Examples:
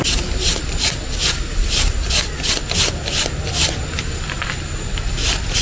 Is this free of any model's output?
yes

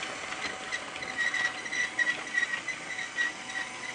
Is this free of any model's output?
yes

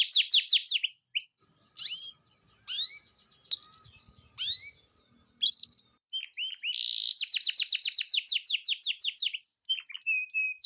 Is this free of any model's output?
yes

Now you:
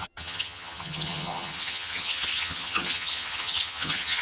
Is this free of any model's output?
no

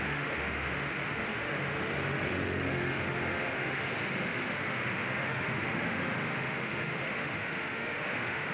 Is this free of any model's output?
no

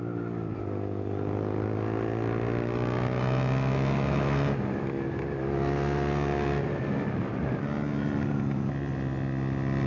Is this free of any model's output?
yes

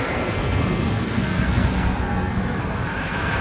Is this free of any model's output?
no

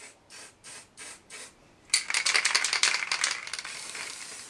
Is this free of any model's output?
no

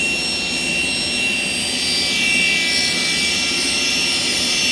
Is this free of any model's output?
yes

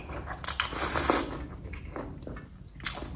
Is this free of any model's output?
yes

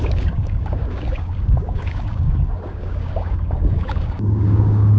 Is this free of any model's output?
no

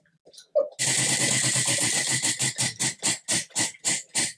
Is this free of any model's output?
yes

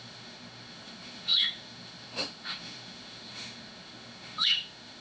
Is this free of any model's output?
no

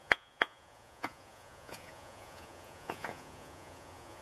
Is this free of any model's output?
no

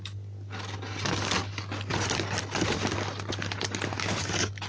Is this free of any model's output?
yes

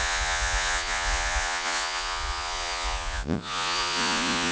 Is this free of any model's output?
no